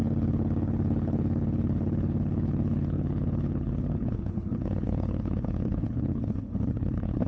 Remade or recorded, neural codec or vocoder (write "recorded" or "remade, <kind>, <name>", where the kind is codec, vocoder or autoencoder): remade, codec, HILCodec